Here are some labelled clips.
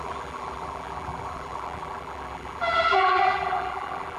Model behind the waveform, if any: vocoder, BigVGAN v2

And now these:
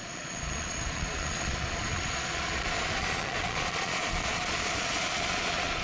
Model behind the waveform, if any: vocoder, Vocos